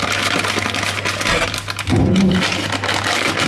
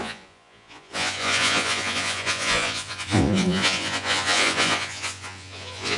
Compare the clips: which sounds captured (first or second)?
first